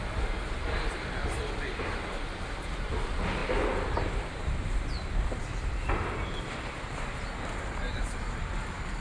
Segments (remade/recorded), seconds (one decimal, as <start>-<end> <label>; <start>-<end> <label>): 0.0-9.0 recorded